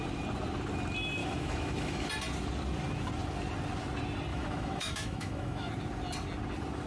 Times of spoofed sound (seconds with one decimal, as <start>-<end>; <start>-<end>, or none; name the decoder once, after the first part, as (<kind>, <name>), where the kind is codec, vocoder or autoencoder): 1.2-2.1 (autoencoder, DAC-VAE); 4.3-5.7